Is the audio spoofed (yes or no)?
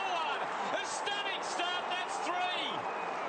no